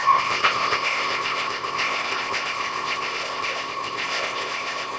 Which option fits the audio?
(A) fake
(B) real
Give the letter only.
A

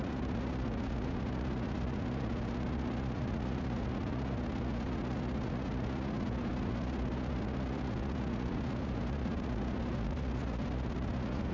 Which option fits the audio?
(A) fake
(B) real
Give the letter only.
A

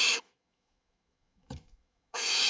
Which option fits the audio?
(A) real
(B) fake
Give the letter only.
B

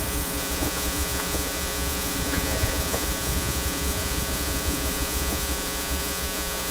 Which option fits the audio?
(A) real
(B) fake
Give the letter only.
B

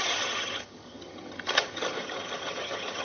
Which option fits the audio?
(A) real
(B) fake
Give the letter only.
B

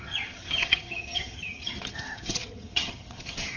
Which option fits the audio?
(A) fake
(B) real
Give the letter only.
A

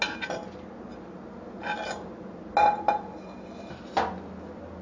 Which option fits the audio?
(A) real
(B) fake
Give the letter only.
A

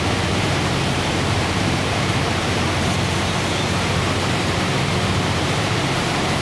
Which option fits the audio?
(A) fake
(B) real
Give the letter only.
A